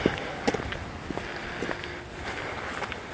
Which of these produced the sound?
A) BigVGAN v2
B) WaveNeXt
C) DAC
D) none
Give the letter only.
D